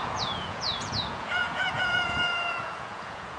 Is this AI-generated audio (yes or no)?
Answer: yes